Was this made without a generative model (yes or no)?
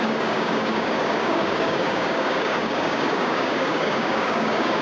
no